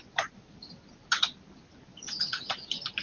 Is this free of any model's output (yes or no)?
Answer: yes